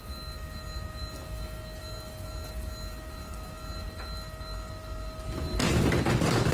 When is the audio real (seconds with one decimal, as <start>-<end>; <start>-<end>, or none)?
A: 0.0-6.5